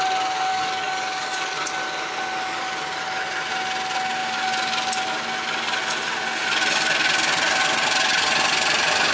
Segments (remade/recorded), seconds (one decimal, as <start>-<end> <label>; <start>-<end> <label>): 0.0-0.5 recorded; 0.5-1.7 remade; 1.7-9.1 recorded